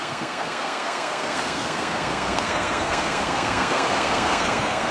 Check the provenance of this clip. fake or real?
fake